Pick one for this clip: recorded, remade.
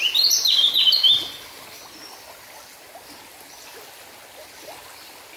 recorded